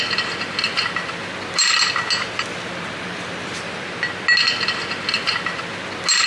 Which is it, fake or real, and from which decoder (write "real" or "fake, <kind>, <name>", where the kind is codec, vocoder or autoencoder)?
real